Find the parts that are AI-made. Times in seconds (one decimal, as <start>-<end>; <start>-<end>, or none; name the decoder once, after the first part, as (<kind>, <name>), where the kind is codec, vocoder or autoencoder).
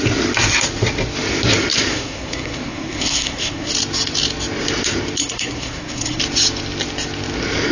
1.9-3.7 (codec, SNAC); 5.2-6.2